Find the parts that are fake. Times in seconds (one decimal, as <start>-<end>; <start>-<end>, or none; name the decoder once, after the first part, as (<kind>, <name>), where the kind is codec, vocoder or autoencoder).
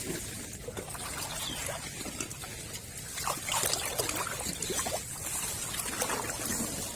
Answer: none